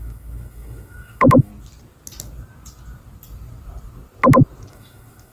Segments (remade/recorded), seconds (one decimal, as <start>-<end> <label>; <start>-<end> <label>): 0.0-1.5 remade; 1.5-4.7 recorded; 4.7-5.3 remade